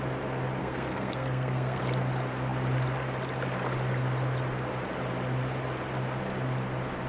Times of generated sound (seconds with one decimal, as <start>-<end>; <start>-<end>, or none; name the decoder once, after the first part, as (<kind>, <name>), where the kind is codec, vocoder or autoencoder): 0.6-1.8 (codec, SNAC)